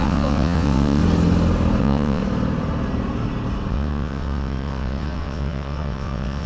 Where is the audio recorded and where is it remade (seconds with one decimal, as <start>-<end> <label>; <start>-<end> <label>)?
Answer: 0.0-1.0 remade; 1.0-1.8 recorded; 1.8-2.2 remade; 2.2-3.7 recorded; 3.7-6.5 remade